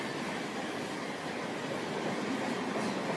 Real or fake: real